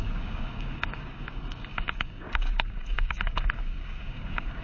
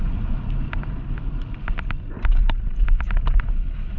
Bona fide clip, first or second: second